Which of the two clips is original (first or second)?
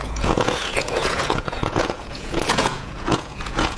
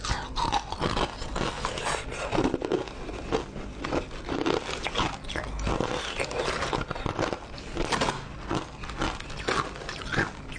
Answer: second